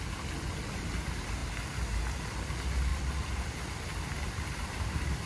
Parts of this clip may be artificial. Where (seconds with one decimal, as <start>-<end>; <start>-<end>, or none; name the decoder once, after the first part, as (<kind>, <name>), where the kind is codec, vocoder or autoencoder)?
2.9-5.3 (vocoder, BigVGAN v2)